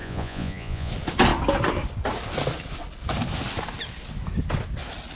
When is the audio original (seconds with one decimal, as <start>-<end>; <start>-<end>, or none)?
0.9-5.2